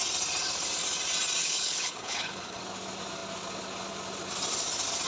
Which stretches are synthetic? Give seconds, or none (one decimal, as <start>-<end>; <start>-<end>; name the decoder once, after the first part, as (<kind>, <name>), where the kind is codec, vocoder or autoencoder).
1.4-2.6 (codec, HILCodec)